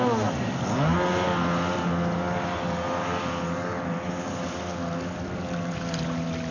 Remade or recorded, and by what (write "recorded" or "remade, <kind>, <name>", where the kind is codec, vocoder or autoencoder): recorded